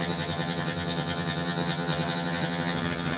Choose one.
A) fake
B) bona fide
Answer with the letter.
A